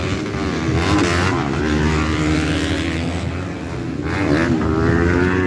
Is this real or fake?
real